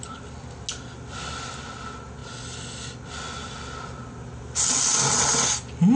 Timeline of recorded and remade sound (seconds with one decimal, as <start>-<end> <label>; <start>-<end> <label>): 0.0-6.0 recorded